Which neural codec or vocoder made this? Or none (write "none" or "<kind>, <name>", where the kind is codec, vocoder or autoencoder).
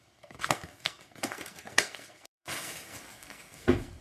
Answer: codec, SNAC